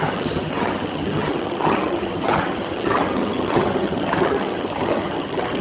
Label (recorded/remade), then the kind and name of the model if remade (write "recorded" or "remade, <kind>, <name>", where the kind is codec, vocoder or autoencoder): remade, vocoder, HiFi-GAN